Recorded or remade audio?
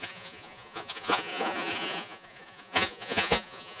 remade